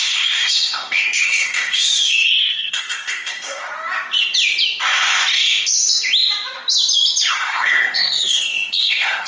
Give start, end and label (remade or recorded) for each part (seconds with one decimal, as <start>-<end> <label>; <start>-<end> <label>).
0.0-3.7 remade; 3.7-7.3 recorded; 7.3-9.3 remade